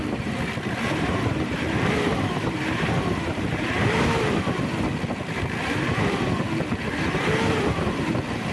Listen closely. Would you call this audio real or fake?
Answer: fake